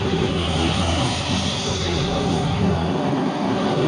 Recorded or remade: remade